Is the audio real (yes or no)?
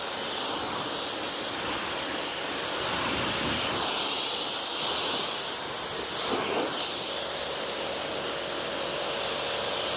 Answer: yes